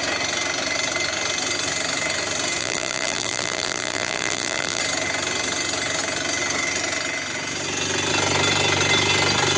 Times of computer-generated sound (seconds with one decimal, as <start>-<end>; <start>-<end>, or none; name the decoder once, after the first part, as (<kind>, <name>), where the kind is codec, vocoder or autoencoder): 2.6-4.8 (vocoder, BigVGAN v2)